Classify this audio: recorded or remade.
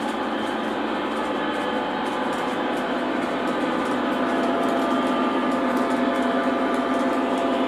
recorded